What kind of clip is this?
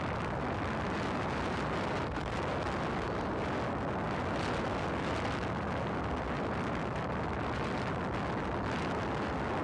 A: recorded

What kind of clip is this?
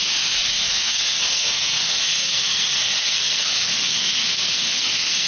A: remade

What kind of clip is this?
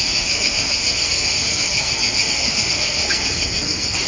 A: remade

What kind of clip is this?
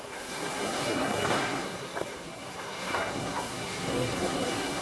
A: remade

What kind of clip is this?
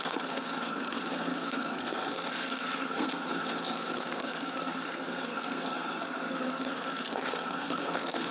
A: remade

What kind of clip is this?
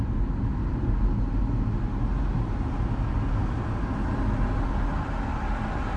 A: recorded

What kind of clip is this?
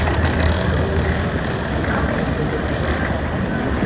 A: recorded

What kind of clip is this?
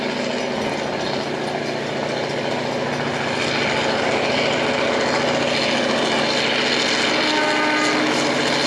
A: recorded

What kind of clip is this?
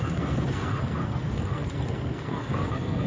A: remade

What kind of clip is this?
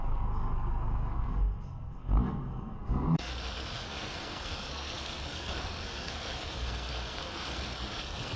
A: remade